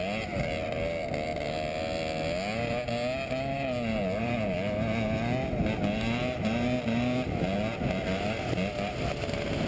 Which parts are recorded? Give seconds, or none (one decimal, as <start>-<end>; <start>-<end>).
0.0-9.7